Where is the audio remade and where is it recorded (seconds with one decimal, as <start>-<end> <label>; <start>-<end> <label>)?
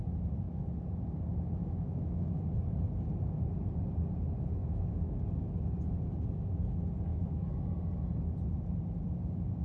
0.0-1.6 recorded; 1.6-2.4 remade; 2.4-4.6 recorded; 4.6-5.2 remade; 5.2-7.1 recorded; 7.1-7.6 remade; 7.6-9.6 recorded